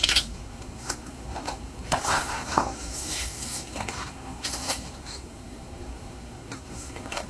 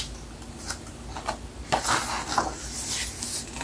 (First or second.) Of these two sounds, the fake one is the first